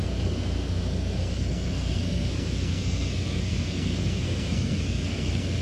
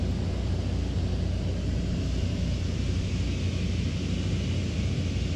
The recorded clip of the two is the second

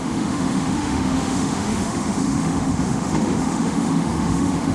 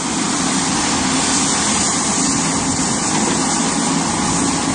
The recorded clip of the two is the second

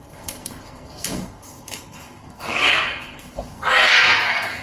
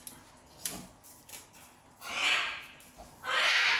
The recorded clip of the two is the second